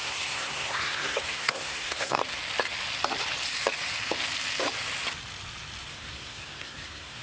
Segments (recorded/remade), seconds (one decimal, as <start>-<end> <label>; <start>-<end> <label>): 0.0-2.2 remade; 2.2-5.9 recorded; 5.9-7.2 remade